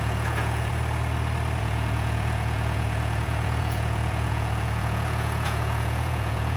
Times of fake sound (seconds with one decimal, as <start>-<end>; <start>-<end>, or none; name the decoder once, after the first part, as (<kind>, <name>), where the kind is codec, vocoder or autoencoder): 0.0-0.7 (vocoder, Vocos); 1.6-6.6